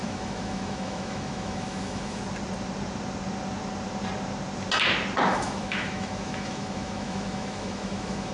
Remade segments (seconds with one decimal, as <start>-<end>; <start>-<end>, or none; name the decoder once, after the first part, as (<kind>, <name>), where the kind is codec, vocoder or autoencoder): 0.0-2.2 (autoencoder, DAC-VAE); 5.3-8.3